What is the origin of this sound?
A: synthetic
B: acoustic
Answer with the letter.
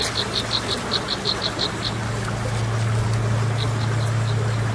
B